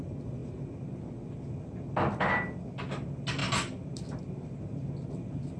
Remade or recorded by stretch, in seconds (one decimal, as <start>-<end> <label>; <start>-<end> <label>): 0.0-5.6 recorded